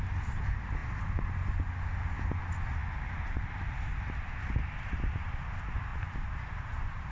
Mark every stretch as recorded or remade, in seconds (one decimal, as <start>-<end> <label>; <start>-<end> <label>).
0.0-5.9 recorded; 5.9-7.1 remade